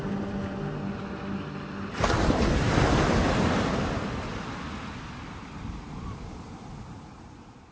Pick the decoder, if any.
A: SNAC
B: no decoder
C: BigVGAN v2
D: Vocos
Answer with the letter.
B